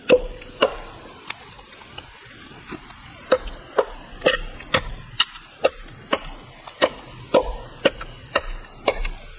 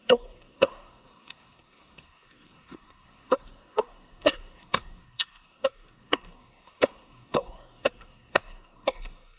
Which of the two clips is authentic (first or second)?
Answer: first